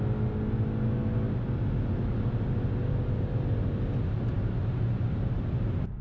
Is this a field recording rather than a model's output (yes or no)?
yes